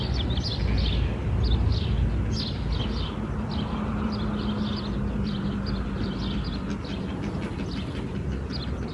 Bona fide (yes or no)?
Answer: yes